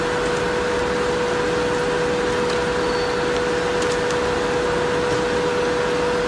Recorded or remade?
recorded